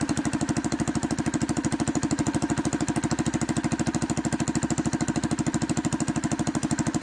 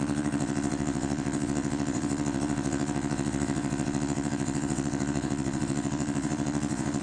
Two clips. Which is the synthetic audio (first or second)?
second